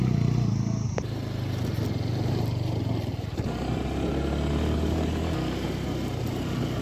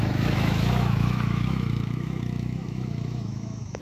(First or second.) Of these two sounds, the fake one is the second